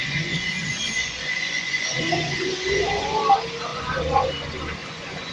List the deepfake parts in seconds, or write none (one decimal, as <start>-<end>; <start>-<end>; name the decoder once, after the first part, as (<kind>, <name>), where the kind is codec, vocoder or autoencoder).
0.0-3.2 (vocoder, Vocos); 3.7-4.3; 4.8-5.3